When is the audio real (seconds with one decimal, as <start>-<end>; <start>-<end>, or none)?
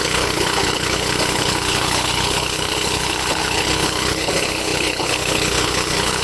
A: none